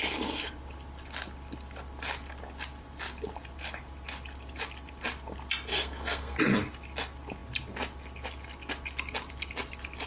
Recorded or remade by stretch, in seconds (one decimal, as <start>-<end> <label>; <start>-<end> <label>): 0.0-5.7 recorded; 5.7-6.4 remade; 6.4-10.1 recorded